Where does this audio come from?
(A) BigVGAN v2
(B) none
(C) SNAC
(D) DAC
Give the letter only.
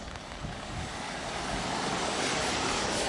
D